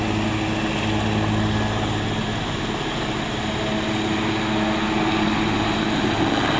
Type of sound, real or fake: real